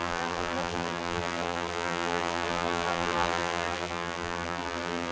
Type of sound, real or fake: fake